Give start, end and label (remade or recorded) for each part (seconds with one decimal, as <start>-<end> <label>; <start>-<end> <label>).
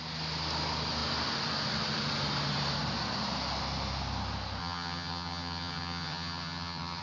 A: 0.0-4.6 recorded; 4.6-7.0 remade